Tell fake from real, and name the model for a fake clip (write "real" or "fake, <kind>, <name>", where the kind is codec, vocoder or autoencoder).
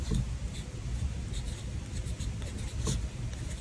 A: real